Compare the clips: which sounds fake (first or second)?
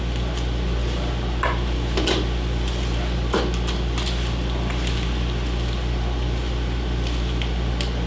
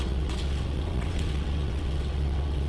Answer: second